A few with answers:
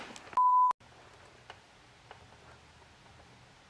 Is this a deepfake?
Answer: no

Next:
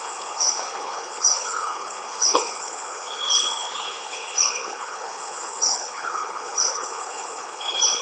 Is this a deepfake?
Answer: yes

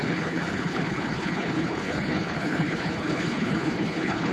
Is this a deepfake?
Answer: yes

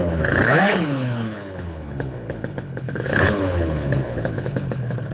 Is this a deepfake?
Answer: yes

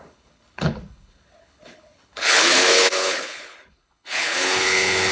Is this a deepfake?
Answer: yes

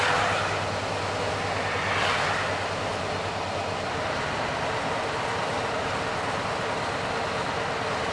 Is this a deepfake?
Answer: no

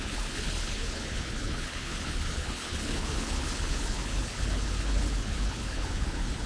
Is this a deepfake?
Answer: yes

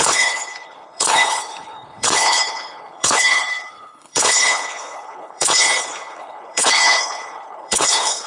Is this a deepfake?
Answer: yes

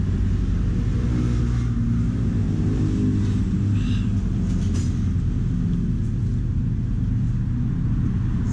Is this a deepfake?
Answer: no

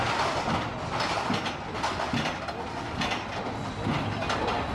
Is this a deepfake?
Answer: no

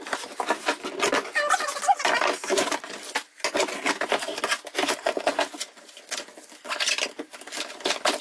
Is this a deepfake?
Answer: no